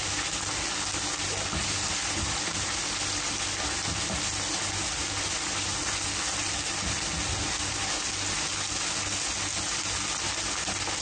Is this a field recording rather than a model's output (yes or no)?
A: yes